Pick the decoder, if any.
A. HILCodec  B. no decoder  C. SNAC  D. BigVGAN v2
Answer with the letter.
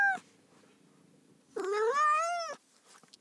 B